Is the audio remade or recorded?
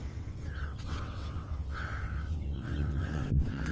remade